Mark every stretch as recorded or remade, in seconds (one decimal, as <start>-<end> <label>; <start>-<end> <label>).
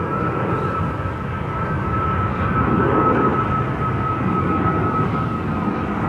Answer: 0.0-3.3 remade; 3.3-3.9 recorded; 3.9-6.1 remade